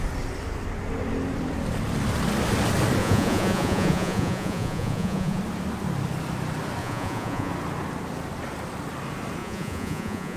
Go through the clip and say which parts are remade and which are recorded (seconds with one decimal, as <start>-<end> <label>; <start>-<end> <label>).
0.0-3.0 recorded; 3.0-5.4 remade; 5.4-6.8 recorded; 6.8-7.5 remade; 7.5-9.4 recorded; 9.4-10.4 remade